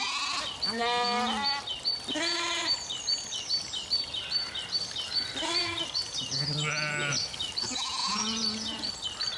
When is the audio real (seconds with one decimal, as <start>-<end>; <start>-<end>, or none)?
0.0-8.0; 8.9-9.4